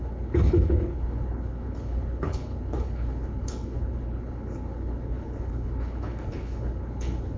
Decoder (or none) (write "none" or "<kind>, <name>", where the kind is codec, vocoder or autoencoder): codec, HILCodec